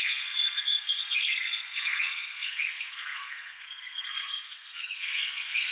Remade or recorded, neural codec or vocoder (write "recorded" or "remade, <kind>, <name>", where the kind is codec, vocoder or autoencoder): remade, codec, SNAC